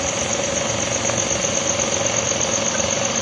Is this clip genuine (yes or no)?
yes